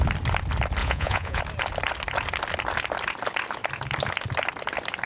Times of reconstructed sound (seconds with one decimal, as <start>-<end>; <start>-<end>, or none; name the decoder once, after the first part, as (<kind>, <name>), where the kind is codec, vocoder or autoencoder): 0.8-1.4 (vocoder, Vocos)

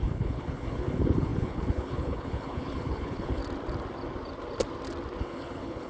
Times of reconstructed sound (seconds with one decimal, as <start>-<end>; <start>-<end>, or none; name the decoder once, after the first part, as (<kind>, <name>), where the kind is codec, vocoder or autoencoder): 0.0-3.4 (codec, HILCodec); 5.2-5.9